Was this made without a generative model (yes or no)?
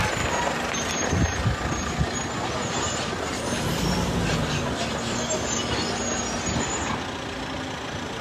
yes